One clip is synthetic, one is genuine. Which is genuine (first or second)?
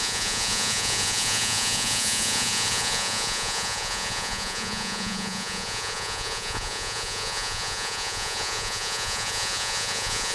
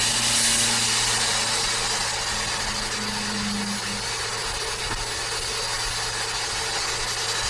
second